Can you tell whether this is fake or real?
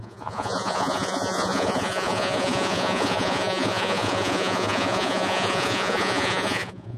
fake